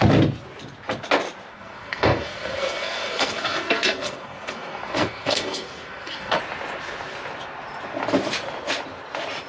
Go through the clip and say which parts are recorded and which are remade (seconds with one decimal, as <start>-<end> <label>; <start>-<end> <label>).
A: 0.0-1.5 recorded; 1.5-6.4 remade; 6.4-9.5 recorded